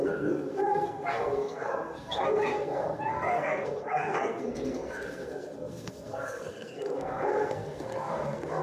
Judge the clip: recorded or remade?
remade